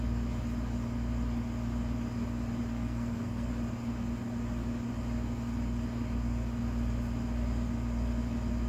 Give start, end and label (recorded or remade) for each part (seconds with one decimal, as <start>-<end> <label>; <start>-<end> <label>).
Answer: 0.0-2.7 recorded; 2.7-3.5 remade; 3.5-8.7 recorded